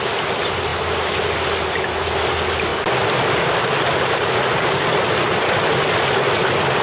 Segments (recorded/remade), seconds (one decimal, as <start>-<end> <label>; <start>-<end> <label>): 0.0-6.8 recorded